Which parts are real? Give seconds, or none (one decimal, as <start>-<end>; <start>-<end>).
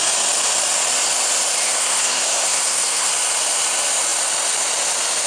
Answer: 0.0-1.6; 3.1-5.3